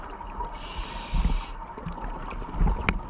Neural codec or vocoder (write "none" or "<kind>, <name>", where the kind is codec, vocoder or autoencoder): none